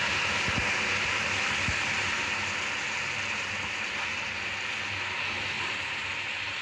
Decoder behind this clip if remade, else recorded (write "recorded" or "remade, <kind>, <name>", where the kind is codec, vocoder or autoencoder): recorded